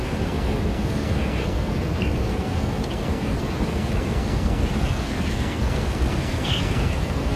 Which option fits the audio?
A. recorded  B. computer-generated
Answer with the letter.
B